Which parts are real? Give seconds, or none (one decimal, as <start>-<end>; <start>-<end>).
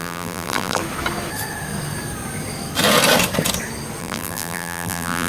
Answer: 0.8-4.0